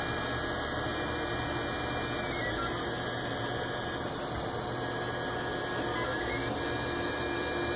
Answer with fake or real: real